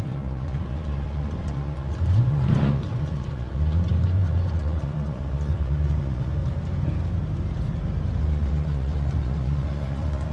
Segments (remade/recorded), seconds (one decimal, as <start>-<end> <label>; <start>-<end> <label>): 0.0-6.4 remade; 6.4-8.2 recorded; 8.2-10.3 remade